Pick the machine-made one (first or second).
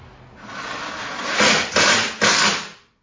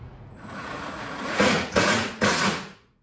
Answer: second